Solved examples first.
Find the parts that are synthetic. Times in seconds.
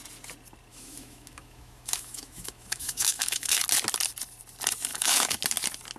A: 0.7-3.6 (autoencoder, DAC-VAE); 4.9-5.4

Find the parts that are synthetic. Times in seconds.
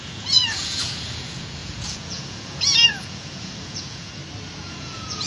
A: 0.0-4.2 (vocoder, Vocos); 4.7-5.3